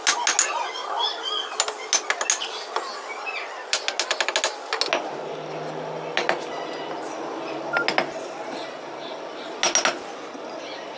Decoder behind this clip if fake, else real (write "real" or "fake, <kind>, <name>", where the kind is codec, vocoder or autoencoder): real